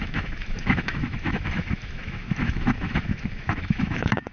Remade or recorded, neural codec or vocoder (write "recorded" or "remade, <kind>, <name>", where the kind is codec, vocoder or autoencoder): remade, autoencoder, DAC-VAE